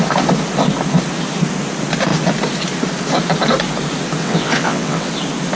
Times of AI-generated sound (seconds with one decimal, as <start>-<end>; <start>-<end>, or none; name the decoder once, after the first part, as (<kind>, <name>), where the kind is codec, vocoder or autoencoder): 4.2-5.1 (vocoder, WaveNeXt)